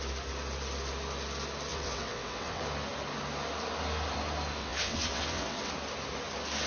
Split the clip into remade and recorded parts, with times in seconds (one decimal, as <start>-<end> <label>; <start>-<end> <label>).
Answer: 0.0-1.7 recorded; 1.7-2.6 remade; 2.6-4.6 recorded; 4.6-5.7 remade; 5.7-6.7 recorded